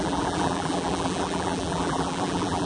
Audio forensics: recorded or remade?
remade